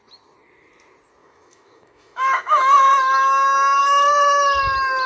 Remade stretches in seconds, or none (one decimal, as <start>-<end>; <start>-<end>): 1.2-2.9